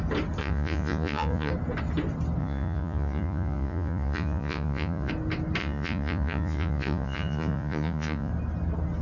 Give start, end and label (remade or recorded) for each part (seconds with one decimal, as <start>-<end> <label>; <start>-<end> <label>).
0.0-0.4 recorded; 0.4-1.5 remade; 1.5-2.4 recorded; 2.4-5.1 remade; 5.1-5.6 recorded; 5.6-8.3 remade; 8.3-9.0 recorded